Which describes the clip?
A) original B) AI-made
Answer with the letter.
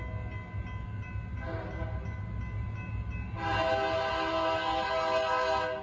A